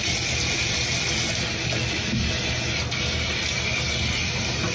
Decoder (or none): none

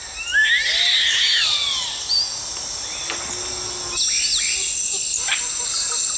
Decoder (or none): none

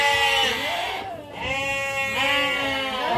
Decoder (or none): none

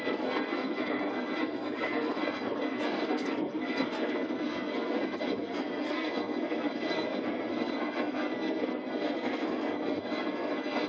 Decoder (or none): codec, SNAC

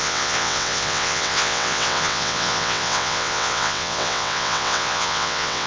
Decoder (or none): vocoder, WaveNeXt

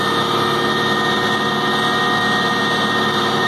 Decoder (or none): none